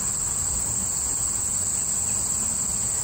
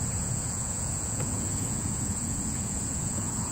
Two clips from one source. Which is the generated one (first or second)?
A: second